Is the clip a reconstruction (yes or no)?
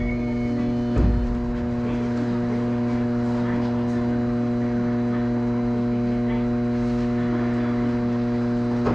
no